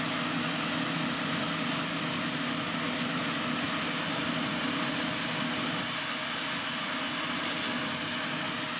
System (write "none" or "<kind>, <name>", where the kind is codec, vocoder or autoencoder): none